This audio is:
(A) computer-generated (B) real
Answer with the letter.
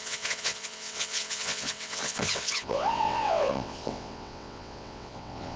A